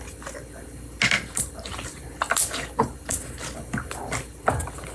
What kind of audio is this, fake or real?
real